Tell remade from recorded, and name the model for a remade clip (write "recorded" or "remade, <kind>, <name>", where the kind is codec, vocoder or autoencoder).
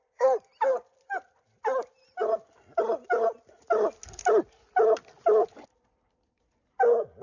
recorded